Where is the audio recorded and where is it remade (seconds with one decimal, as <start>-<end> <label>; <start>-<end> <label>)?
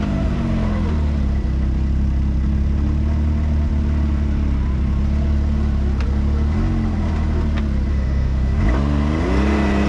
0.0-7.9 recorded; 7.9-8.6 remade; 8.6-9.9 recorded